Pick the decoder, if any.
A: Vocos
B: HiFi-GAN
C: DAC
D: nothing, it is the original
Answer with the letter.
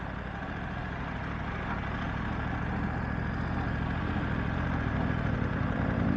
D